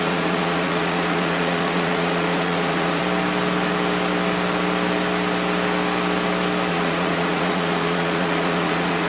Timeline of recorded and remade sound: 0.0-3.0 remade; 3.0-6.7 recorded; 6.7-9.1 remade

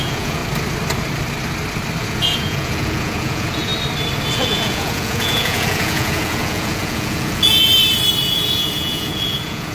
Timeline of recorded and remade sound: 0.0-0.4 remade; 0.4-2.0 recorded; 2.0-3.7 remade; 3.7-4.3 recorded; 4.3-7.7 remade; 7.7-8.3 recorded; 8.3-9.7 remade

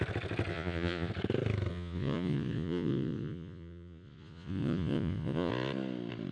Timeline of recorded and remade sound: 0.0-0.5 recorded; 0.5-1.1 remade; 1.1-1.7 recorded; 1.7-5.5 remade; 5.5-6.3 recorded

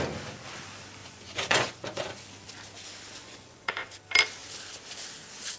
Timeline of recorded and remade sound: 0.0-1.0 recorded; 1.0-2.2 remade; 2.2-3.2 recorded; 3.2-3.9 remade; 3.9-5.6 recorded

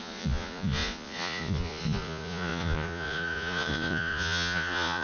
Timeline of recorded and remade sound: 0.0-5.0 remade

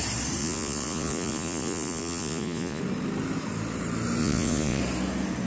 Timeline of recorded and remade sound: 0.0-0.4 recorded; 0.4-2.8 remade; 2.8-4.2 recorded; 4.2-4.8 remade; 4.8-5.5 recorded